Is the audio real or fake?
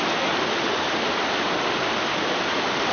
real